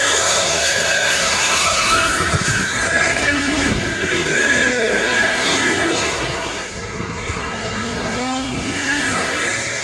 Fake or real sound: fake